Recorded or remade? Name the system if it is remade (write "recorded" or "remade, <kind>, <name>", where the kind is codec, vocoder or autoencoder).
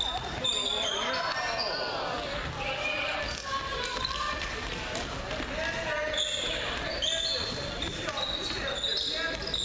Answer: recorded